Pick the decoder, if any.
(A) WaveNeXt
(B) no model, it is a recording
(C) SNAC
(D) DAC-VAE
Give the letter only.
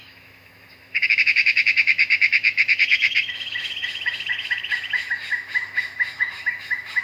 D